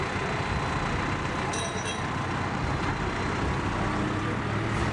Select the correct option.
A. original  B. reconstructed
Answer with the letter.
A